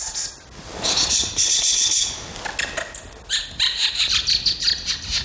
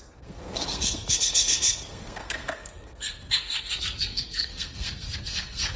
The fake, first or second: second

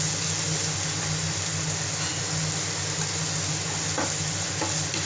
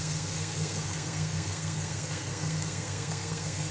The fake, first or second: second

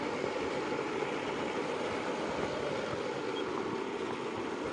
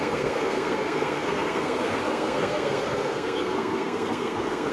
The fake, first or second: second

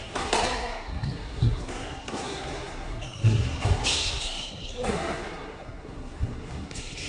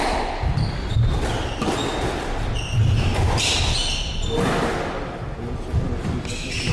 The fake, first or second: first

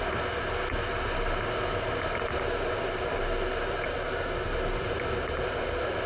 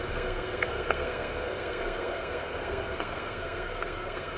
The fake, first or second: second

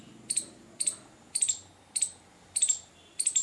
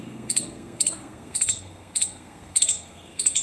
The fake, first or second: second